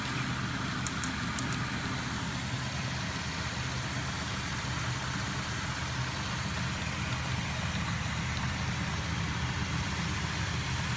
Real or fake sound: real